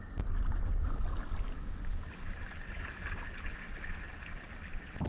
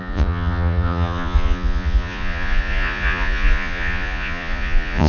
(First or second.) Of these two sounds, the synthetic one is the second